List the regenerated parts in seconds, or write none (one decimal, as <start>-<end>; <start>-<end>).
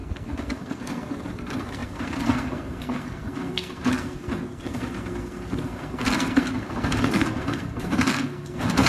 0.0-8.9